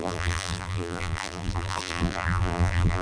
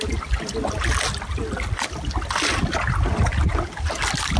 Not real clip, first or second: first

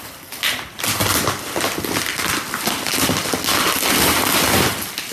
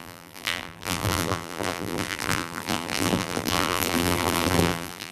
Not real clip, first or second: second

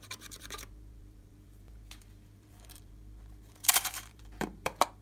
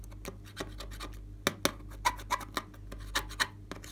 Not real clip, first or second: first